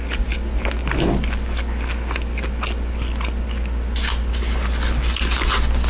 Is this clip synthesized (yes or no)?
no